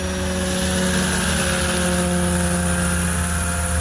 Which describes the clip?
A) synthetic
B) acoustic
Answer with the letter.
B